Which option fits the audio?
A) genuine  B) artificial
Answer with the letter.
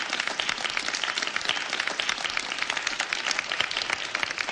A